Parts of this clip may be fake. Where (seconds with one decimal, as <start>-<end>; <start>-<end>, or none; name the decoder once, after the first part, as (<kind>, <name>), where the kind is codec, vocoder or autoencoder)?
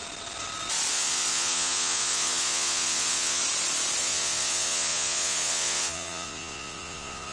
0.9-3.4 (vocoder, Vocos); 4.0-7.3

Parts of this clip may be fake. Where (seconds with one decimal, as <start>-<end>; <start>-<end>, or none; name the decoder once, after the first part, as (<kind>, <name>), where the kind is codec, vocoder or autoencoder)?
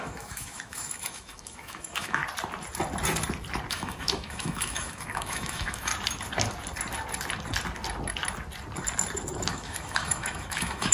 0.0-2.2 (autoencoder, DAC-VAE); 3.7-5.9; 9.5-10.9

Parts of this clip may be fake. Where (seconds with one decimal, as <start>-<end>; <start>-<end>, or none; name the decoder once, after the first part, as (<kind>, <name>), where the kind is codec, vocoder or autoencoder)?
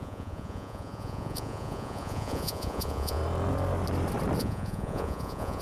0.0-3.2 (vocoder, Vocos); 4.4-5.6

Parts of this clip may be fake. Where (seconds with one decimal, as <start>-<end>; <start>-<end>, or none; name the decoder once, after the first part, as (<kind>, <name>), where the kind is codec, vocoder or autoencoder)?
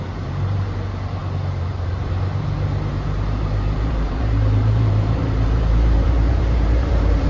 0.0-7.3 (vocoder, BigVGAN v2)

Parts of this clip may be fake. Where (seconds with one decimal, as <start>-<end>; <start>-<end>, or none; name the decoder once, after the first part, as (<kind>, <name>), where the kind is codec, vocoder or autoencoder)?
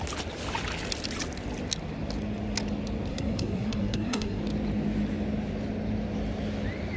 3.1-4.4 (codec, SNAC)